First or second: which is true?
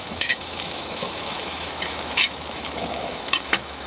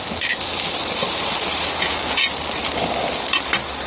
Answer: second